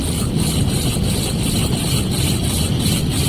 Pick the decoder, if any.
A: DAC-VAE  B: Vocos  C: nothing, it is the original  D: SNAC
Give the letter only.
C